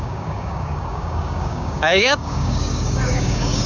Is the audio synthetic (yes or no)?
yes